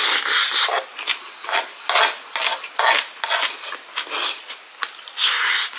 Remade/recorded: recorded